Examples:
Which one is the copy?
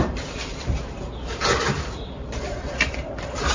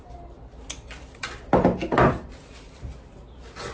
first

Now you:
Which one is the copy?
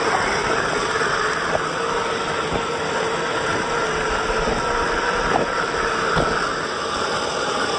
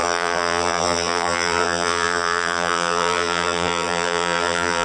second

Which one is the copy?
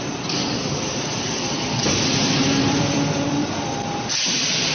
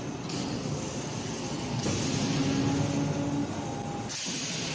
first